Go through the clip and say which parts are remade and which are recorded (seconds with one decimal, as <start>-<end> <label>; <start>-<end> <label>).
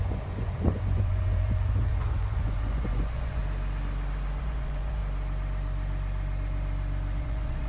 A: 0.0-3.4 remade; 3.4-4.4 recorded; 4.4-5.0 remade; 5.0-7.2 recorded; 7.2-7.7 remade